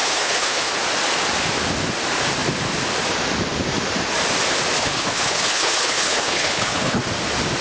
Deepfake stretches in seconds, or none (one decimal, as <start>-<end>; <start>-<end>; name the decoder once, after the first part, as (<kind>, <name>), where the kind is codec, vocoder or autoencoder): 0.0-0.7 (codec, HILCodec); 4.8-7.0